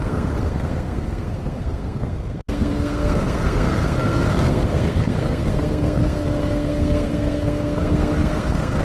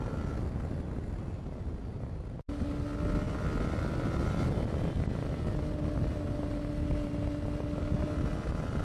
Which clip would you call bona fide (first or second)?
second